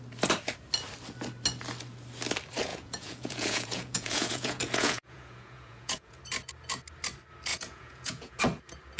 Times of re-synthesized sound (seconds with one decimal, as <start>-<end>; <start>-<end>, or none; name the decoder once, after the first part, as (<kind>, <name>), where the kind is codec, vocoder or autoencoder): 2.7-6.2 (vocoder, Vocos); 7.5-8.4